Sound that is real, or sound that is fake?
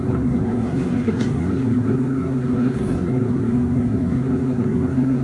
fake